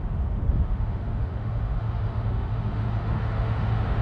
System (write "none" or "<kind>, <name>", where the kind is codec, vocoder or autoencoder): autoencoder, DAC-VAE